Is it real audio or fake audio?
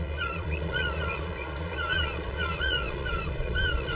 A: fake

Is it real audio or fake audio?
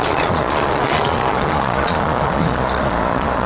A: fake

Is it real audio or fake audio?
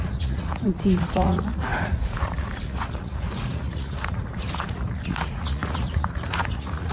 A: fake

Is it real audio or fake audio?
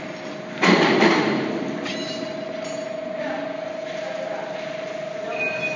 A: real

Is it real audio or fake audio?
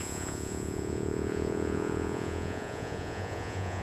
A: fake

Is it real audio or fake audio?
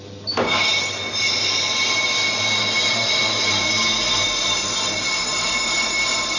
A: real